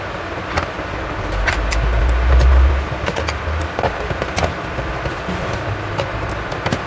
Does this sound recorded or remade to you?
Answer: recorded